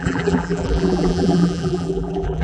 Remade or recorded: remade